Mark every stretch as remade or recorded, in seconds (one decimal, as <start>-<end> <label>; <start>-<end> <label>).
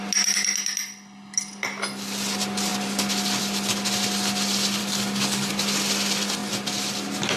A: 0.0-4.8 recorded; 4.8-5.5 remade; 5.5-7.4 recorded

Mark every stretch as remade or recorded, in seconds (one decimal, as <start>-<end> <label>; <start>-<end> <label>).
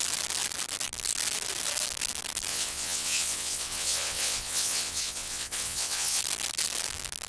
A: 0.0-2.5 recorded; 2.5-6.2 remade; 6.2-7.3 recorded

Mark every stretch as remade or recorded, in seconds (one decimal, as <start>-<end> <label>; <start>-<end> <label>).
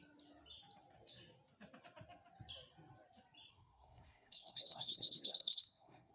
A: 0.0-3.5 recorded; 3.5-6.1 remade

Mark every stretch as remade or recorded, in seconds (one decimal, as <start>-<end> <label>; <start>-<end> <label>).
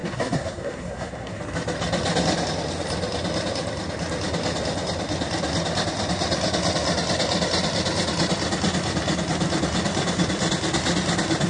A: 0.0-1.4 remade; 1.4-11.5 recorded